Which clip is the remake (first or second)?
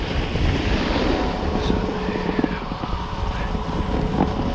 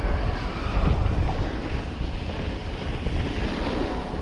first